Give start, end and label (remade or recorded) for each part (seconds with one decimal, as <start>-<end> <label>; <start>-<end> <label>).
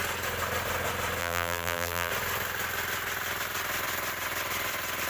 0.0-1.2 recorded; 1.2-2.1 remade; 2.1-5.1 recorded